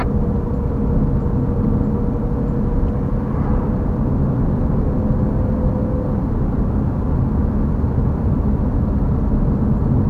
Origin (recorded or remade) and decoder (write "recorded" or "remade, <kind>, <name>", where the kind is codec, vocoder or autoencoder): recorded